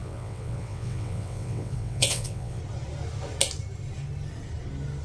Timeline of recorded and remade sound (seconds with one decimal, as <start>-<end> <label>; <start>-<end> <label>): 0.0-2.6 remade; 2.6-5.0 recorded